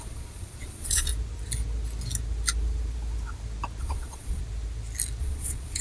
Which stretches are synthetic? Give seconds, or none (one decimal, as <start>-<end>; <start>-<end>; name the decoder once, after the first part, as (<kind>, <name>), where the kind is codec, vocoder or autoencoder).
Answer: 0.0-1.1 (vocoder, Vocos); 3.8-4.4; 5.2-5.8